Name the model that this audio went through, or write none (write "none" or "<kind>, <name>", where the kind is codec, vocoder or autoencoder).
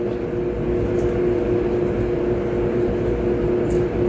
none